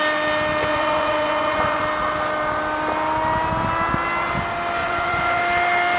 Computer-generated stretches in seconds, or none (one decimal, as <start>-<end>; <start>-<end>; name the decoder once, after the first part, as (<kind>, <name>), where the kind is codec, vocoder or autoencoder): 0.7-1.8 (vocoder, Vocos); 4.8-5.4